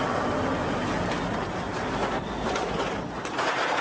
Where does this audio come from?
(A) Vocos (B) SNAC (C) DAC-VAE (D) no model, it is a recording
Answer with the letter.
D